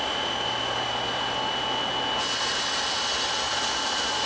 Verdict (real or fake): real